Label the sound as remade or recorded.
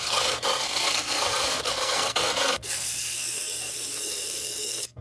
remade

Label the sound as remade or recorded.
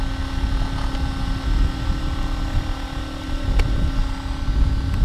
recorded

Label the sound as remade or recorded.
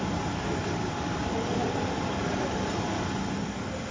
recorded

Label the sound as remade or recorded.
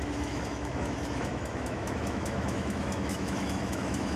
remade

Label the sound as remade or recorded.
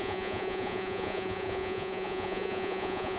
remade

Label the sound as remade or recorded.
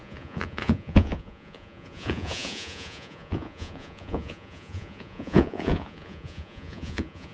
remade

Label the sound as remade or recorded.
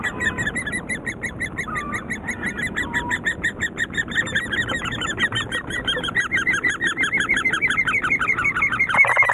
remade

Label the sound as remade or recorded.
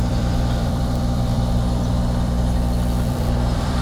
remade